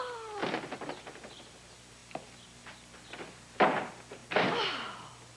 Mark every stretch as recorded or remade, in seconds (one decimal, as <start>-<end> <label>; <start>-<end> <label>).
0.0-5.4 recorded